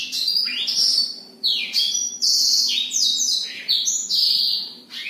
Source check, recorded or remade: recorded